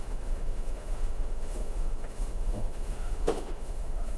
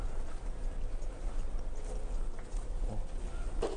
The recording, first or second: second